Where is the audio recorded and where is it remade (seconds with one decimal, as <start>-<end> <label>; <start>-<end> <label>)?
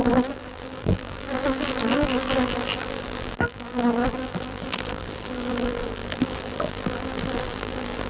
0.0-8.1 remade